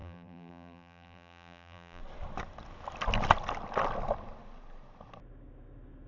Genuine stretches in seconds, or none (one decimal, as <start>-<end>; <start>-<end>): 2.0-6.1